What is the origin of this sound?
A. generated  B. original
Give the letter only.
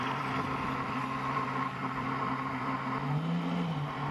A